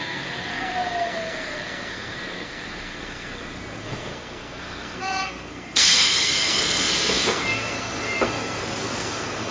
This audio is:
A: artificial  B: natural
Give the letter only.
A